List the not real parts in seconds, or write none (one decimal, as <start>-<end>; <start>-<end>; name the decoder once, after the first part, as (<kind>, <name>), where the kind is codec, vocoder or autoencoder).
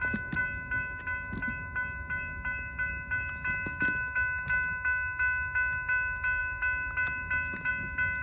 none